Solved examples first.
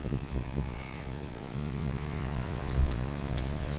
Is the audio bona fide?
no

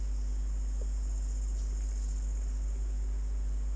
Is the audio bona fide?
yes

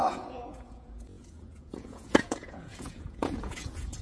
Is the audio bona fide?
no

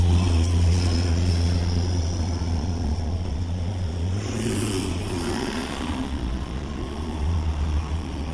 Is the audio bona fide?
no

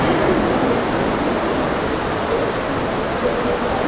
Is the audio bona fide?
yes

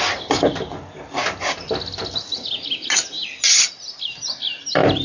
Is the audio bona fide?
yes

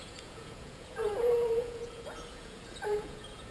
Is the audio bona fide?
no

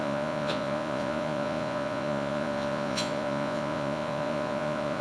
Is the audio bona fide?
no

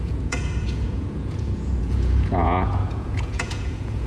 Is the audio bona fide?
no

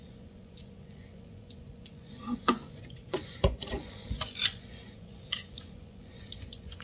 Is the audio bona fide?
no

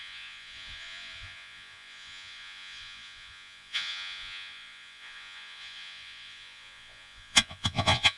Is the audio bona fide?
no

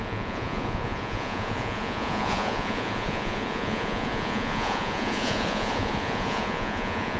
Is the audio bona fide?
no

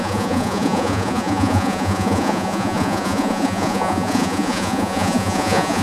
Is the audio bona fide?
no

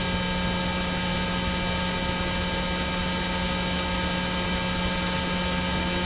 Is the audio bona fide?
yes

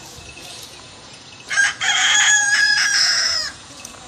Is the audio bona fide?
no